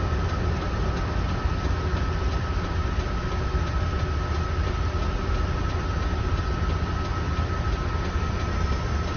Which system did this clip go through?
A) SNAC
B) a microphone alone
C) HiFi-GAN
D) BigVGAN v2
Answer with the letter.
B